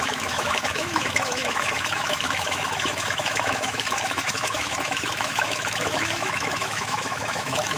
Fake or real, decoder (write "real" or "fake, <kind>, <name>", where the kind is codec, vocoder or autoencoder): fake, autoencoder, DAC-VAE